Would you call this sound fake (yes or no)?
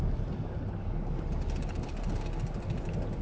no